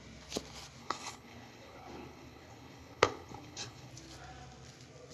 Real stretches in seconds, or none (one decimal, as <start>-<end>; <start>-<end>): 0.0-0.8; 3.9-5.1